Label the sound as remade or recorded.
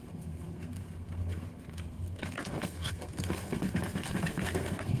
remade